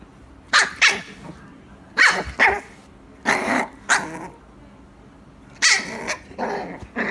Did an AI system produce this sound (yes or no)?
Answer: no